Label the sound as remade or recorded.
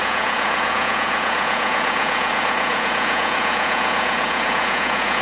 remade